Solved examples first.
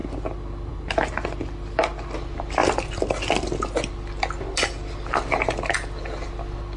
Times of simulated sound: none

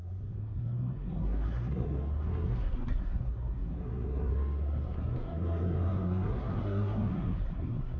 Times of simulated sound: 0.0-8.0 (codec, SNAC)

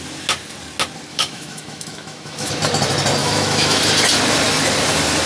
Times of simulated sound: 1.1-2.5 (autoencoder, DAC-VAE); 3.2-3.8

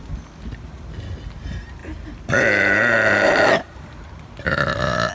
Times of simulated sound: 1.8-5.1 (vocoder, BigVGAN v2)

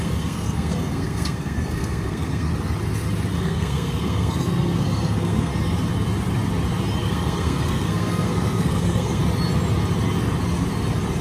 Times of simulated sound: 0.0-2.5 (codec, SNAC); 3.4-5.5; 7.0-9.2

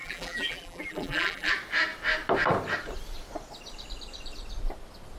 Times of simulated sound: 0.0-1.5 (vocoder, BigVGAN v2)

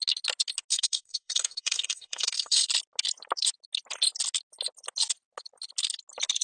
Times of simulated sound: 0.7-2.7 (codec, SNAC)

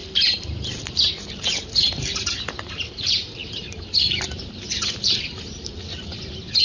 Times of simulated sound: 0.8-6.6 (vocoder, BigVGAN v2)